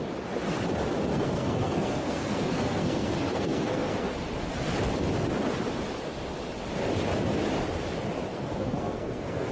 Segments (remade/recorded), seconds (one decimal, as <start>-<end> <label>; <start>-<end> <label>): 0.0-1.1 recorded; 1.1-4.1 remade; 4.1-8.3 recorded; 8.3-9.5 remade